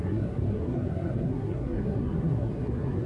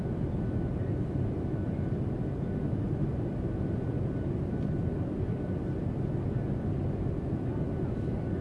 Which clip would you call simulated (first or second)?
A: first